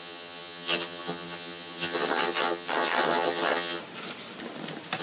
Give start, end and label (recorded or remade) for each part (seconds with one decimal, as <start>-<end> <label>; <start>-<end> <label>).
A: 0.0-3.8 remade; 3.8-5.0 recorded